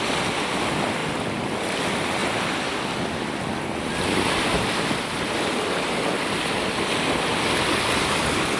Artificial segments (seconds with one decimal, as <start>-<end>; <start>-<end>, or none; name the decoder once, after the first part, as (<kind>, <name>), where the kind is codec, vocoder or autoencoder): none